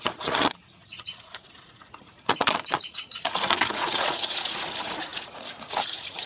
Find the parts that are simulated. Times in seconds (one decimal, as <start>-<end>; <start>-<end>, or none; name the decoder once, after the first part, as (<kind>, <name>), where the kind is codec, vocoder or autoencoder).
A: 0.0-6.3 (vocoder, Vocos)